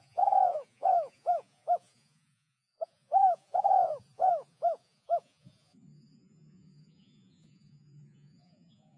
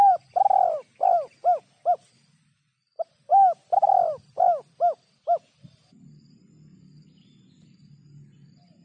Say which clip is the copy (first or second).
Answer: first